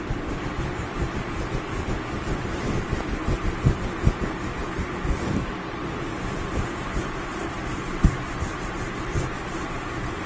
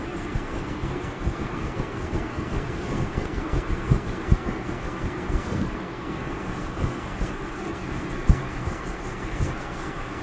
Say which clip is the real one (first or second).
first